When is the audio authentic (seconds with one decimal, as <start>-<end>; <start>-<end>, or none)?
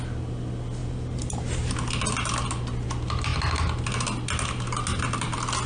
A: 0.0-0.8; 1.7-5.7